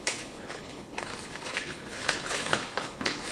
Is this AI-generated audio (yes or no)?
yes